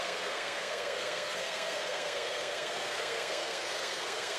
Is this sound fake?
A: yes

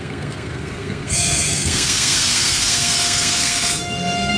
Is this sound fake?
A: yes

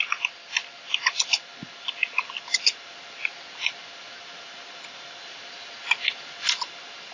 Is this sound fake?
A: no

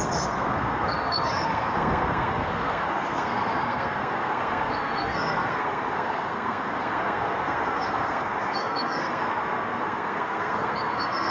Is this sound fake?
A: yes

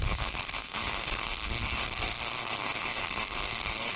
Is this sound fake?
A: yes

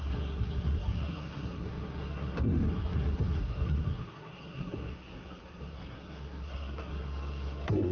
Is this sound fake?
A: yes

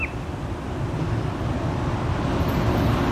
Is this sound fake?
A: no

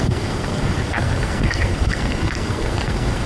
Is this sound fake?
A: yes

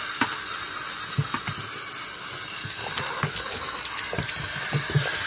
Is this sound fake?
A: no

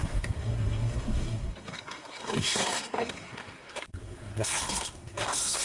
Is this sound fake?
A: yes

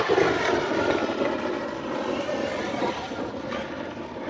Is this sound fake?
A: no